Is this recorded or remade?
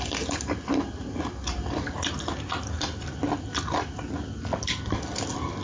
recorded